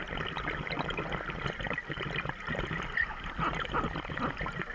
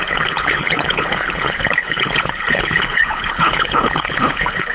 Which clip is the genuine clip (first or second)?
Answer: first